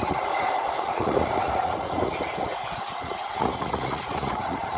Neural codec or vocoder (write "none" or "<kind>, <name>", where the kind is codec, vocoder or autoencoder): vocoder, Vocos